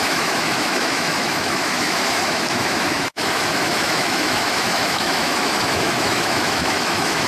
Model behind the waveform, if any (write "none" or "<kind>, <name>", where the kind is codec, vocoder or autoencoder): autoencoder, DAC-VAE